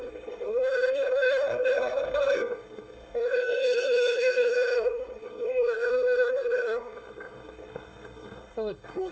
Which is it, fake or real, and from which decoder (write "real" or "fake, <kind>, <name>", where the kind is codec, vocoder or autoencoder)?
fake, codec, SNAC